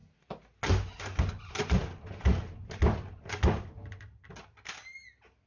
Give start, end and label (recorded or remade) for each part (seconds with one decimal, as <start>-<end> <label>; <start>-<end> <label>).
0.0-5.5 recorded